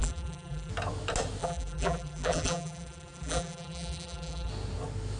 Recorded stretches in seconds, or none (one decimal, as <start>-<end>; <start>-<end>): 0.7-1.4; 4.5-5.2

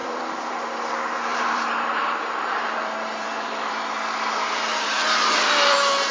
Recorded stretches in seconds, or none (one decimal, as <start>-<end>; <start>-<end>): 3.7-4.7

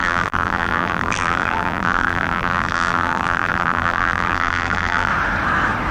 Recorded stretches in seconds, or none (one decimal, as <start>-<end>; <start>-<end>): 5.1-5.9

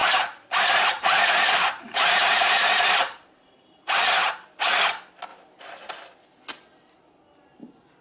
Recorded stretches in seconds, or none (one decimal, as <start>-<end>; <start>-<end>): 4.0-5.3; 5.9-8.0

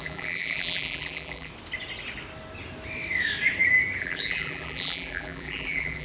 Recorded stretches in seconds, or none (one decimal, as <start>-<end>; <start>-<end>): 1.5-4.0

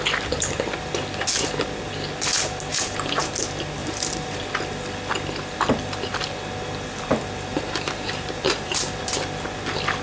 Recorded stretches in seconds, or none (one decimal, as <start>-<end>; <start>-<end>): 0.0-2.7; 3.3-3.8; 4.4-7.5; 8.8-10.0

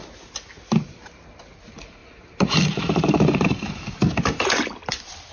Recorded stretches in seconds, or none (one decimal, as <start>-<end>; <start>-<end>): 1.3-2.0